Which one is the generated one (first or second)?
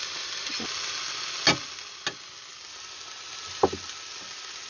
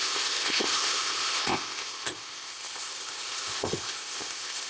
second